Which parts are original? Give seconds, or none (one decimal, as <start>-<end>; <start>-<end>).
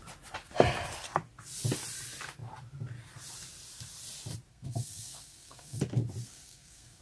0.0-4.5; 5.8-6.2